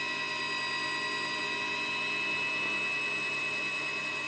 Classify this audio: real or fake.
real